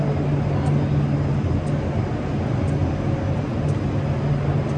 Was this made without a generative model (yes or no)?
yes